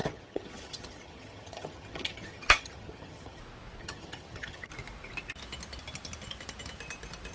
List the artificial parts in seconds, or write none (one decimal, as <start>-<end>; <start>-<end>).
0.0-3.4; 3.8-4.7